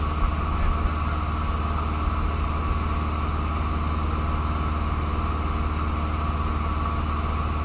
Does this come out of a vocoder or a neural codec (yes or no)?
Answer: no